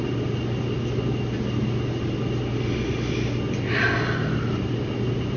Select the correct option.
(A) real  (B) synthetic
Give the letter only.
A